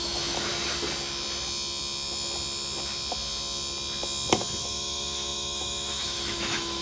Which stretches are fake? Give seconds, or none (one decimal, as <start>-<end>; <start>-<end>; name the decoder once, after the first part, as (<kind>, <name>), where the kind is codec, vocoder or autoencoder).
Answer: 0.0-0.5 (autoencoder, DAC-VAE); 4.6-6.8